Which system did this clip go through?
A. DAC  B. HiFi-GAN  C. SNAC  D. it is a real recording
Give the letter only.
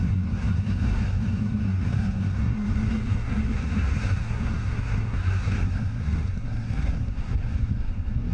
C